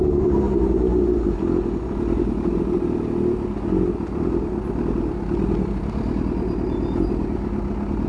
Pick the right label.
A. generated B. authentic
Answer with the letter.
B